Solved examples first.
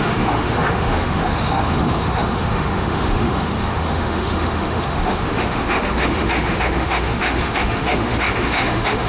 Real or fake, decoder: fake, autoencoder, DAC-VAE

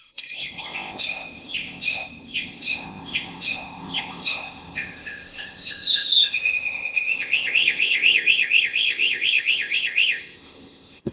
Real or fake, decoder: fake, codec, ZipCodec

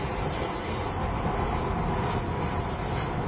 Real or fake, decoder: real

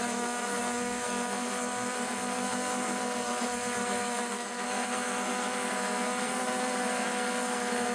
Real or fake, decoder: fake, codec, SNAC